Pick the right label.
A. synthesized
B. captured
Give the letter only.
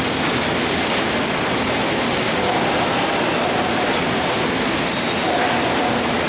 B